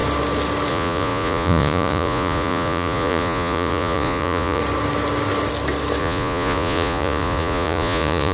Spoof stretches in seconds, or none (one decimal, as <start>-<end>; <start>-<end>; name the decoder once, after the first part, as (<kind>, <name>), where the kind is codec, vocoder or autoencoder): 0.7-4.6 (vocoder, Vocos); 6.0-8.3

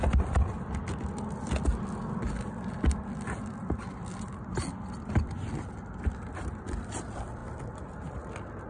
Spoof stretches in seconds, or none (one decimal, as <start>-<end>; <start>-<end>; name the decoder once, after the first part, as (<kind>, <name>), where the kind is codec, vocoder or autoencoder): none

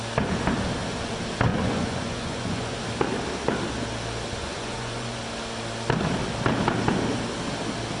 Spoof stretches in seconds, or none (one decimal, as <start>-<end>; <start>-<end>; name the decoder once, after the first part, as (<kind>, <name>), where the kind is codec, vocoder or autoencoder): 1.5-2.8 (vocoder, Vocos); 4.4-5.2

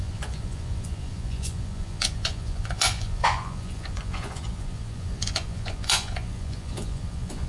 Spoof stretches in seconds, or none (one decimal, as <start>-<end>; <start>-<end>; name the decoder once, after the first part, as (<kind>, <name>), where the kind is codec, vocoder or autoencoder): 0.0-7.5 (vocoder, Vocos)

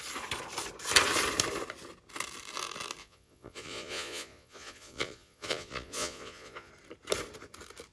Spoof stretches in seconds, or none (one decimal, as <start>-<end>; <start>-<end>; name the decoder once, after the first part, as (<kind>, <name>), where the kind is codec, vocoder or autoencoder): 3.0-6.7 (vocoder, Vocos)

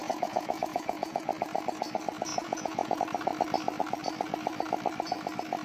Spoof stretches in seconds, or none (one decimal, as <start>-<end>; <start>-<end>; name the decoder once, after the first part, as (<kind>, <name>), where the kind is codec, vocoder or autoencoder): 0.0-1.3 (vocoder, Vocos); 2.3-3.0

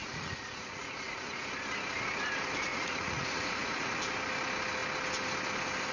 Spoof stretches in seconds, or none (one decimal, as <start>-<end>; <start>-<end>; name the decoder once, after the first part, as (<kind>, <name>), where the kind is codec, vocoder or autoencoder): 0.0-1.5 (vocoder, Vocos); 2.7-4.0